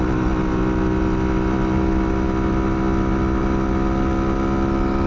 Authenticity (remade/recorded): recorded